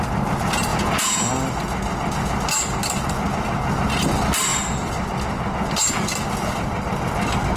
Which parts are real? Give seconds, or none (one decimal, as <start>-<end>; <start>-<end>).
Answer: 0.0-0.7; 1.3-7.6